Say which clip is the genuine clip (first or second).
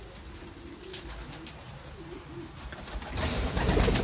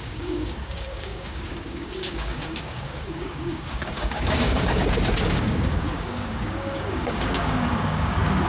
first